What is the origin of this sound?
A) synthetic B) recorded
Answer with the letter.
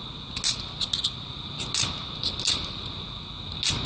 B